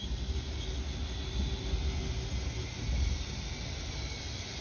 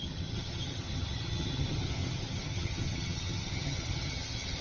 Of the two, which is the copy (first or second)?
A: second